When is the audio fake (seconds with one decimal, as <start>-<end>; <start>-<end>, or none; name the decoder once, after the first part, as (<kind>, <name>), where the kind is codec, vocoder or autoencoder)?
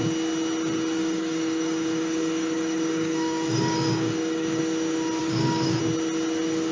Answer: 1.0-4.6 (codec, DAC); 5.2-5.8